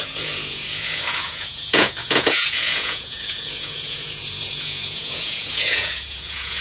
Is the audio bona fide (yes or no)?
no